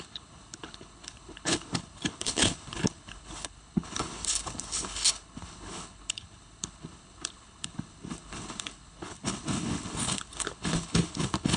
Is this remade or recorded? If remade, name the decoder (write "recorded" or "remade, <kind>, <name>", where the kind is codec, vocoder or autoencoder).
remade, codec, HILCodec